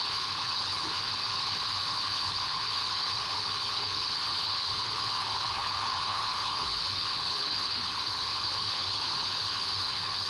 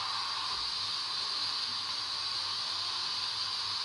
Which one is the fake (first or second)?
first